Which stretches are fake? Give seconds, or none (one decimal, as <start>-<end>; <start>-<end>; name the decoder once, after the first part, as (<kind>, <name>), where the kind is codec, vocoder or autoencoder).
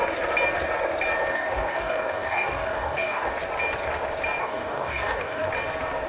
1.3-3.3 (codec, DAC); 4.4-5.5